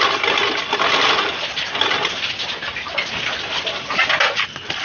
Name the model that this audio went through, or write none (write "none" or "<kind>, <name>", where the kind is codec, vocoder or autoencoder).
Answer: none